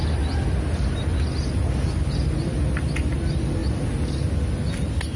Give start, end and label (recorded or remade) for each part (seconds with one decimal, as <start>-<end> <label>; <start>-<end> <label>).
0.0-5.2 recorded